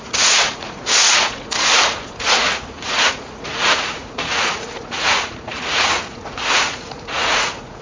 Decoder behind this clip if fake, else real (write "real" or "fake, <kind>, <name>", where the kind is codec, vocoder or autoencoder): fake, vocoder, Vocos